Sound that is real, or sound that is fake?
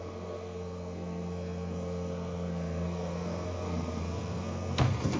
fake